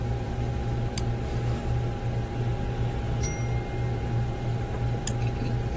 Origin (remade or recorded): recorded